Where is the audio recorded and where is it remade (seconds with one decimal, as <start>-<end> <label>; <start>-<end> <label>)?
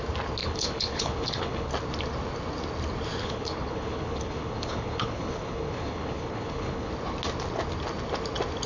0.0-0.4 recorded; 0.4-1.7 remade; 1.7-3.2 recorded; 3.2-6.9 remade; 6.9-8.7 recorded